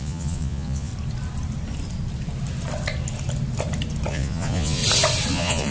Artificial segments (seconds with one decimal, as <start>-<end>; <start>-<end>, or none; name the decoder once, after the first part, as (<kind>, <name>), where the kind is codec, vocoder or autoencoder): 0.0-0.9 (vocoder, Vocos); 4.1-4.8; 5.3-5.7